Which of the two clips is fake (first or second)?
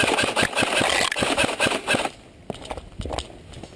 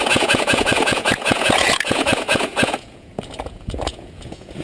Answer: second